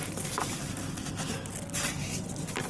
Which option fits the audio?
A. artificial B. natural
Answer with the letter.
B